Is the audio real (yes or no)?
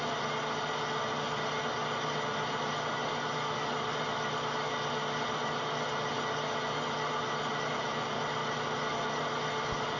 yes